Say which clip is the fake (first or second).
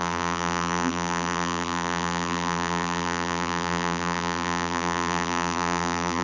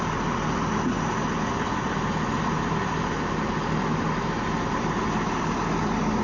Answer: first